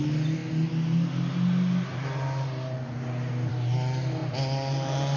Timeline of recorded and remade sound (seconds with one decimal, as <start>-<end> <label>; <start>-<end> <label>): 0.0-5.2 recorded